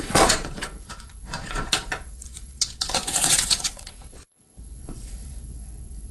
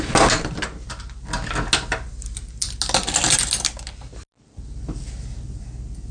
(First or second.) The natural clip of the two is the second